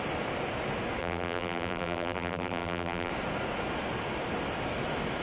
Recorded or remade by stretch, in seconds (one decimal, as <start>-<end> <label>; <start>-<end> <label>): 0.0-1.0 recorded; 1.0-3.1 remade; 3.1-5.2 recorded

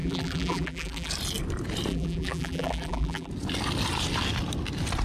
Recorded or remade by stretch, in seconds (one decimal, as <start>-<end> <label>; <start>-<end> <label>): 0.0-1.1 remade; 1.1-1.9 recorded; 1.9-3.3 remade; 3.3-5.0 recorded

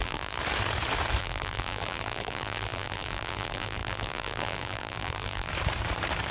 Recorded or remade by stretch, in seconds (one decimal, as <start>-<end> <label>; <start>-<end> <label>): 0.0-0.4 remade; 0.4-1.2 recorded; 1.2-5.5 remade; 5.5-6.3 recorded

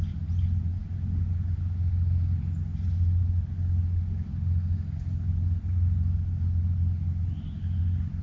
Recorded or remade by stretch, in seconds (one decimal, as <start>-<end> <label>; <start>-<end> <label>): 0.0-8.2 recorded